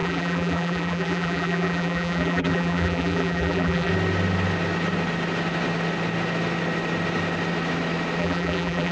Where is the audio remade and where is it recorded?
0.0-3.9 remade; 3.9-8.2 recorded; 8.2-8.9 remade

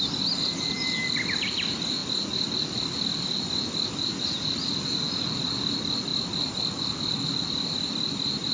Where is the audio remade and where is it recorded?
0.0-2.0 remade; 2.0-2.5 recorded; 2.5-8.5 remade

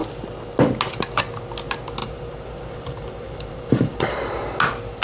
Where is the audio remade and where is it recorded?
0.0-2.0 recorded; 2.0-4.4 remade; 4.4-5.0 recorded

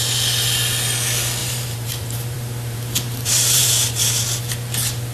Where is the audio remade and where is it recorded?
0.0-1.4 recorded; 1.4-4.2 remade; 4.2-5.1 recorded

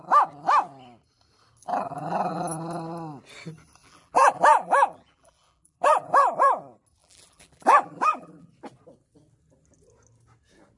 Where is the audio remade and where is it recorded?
0.0-1.6 recorded; 1.6-2.4 remade; 2.4-3.8 recorded; 3.8-6.6 remade; 6.6-7.0 recorded; 7.0-8.5 remade; 8.5-10.8 recorded